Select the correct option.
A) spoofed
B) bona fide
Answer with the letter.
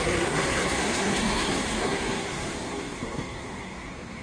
A